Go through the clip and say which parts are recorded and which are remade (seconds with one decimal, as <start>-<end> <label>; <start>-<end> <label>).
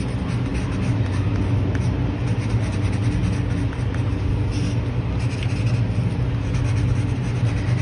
0.0-7.8 recorded